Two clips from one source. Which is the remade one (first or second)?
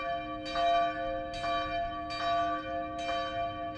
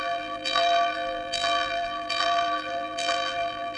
second